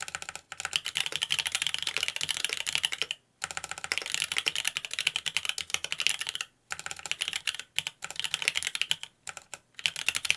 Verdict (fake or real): real